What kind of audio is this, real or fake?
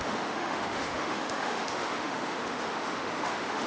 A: fake